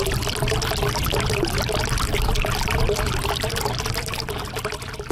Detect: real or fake real